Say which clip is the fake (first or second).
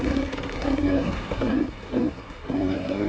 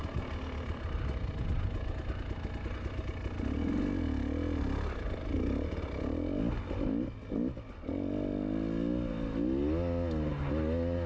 first